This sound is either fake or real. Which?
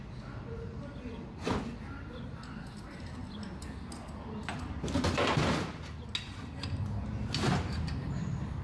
real